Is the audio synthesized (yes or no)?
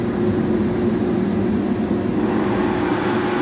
no